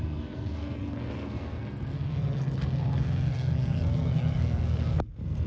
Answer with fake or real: fake